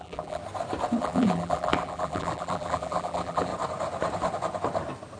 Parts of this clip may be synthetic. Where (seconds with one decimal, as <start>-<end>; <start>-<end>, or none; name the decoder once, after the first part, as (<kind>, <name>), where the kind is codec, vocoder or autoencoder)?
0.0-0.4 (vocoder, BigVGAN v2); 1.0-3.5